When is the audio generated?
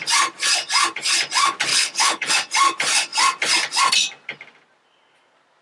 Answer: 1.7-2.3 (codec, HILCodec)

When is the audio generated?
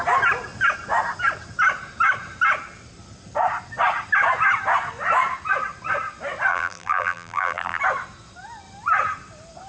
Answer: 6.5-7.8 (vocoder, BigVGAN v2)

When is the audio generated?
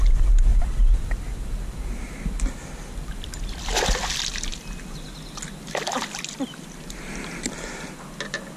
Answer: none